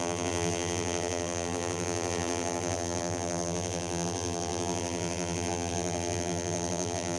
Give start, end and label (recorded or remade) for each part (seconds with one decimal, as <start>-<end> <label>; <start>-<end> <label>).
0.0-7.2 remade